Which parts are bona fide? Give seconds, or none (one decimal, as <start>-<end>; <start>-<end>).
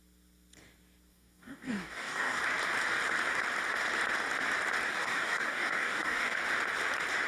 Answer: 0.0-1.1; 2.4-4.9; 6.4-7.3